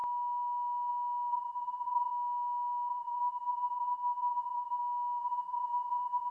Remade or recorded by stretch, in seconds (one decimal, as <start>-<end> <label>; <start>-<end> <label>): 0.0-1.3 recorded; 1.3-2.1 remade; 2.1-2.9 recorded; 2.9-4.8 remade; 4.8-5.2 recorded; 5.2-6.3 remade